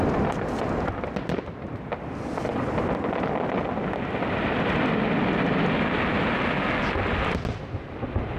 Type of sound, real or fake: real